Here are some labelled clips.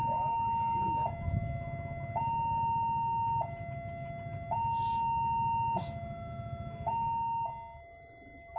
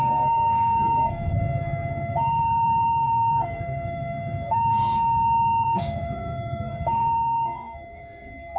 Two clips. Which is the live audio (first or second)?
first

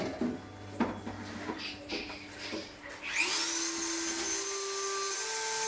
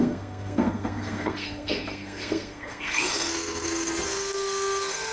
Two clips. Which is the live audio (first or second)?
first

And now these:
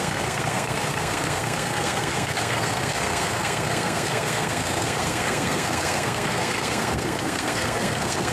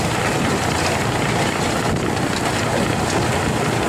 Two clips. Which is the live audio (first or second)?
second